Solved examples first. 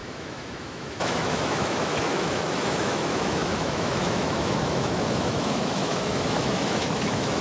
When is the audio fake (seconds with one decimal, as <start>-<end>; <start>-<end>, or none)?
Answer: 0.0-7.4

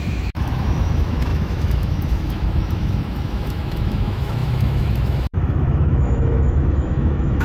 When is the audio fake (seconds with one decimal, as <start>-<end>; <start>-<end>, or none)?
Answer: 0.0-7.4

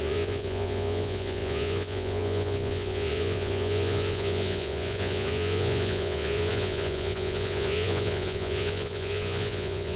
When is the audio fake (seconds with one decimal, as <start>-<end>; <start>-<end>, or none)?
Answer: 0.0-10.0

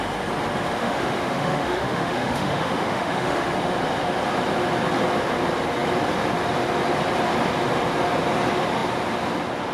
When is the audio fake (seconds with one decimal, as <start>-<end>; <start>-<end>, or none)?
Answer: 0.8-3.5

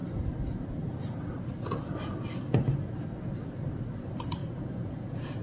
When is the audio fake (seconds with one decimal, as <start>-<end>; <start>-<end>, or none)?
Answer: 4.4-5.4